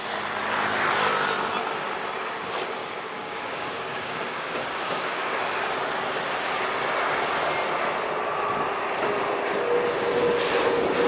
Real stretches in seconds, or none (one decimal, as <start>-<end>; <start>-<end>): 0.0-2.8; 5.4-11.1